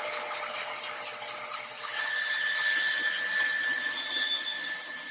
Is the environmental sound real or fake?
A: real